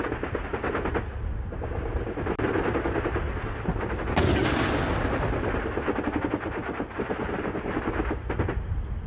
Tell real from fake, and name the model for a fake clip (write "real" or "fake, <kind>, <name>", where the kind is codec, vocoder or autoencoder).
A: real